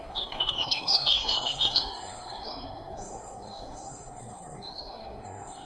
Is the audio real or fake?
fake